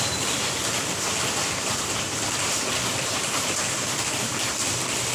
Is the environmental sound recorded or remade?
recorded